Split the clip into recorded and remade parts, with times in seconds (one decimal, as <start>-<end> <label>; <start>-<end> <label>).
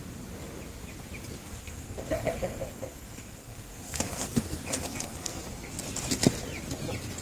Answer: 0.0-1.4 recorded; 1.4-5.7 remade; 5.7-7.2 recorded